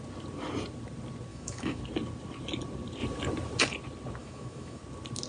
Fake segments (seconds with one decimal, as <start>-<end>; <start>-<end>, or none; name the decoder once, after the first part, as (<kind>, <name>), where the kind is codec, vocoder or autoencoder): 1.3-1.8 (autoencoder, DAC-VAE); 4.2-4.8